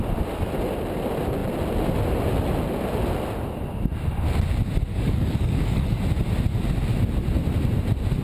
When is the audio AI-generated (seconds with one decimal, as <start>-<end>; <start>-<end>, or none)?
4.9-6.0